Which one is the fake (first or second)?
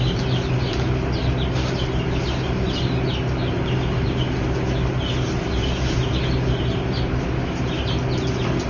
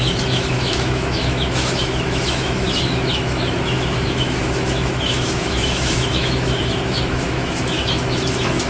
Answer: second